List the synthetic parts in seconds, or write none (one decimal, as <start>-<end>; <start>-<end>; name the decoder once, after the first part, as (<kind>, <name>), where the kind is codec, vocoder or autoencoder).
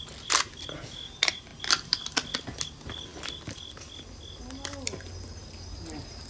none